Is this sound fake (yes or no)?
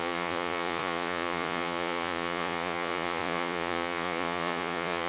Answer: yes